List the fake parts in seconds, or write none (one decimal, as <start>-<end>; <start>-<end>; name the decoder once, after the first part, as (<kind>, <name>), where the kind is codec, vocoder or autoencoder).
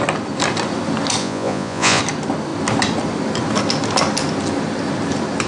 1.2-2.0 (vocoder, Vocos)